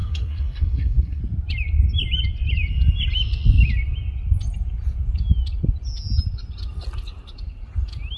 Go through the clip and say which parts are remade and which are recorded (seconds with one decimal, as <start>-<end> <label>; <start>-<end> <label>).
0.0-1.2 remade; 1.2-8.2 recorded